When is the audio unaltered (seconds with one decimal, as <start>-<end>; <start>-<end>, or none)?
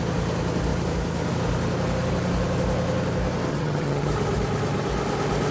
0.0-3.5; 4.1-5.5